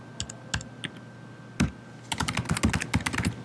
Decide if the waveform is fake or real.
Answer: real